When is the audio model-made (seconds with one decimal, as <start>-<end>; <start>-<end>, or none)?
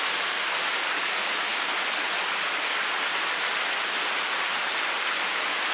none